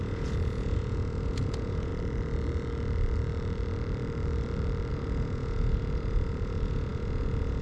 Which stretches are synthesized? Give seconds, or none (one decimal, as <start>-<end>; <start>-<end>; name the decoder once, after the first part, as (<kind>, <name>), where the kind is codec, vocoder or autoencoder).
0.0-1.9 (vocoder, Vocos); 4.9-7.6